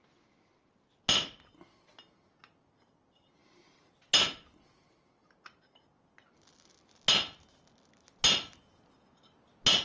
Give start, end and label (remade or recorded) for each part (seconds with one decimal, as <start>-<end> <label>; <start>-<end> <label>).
0.0-9.8 recorded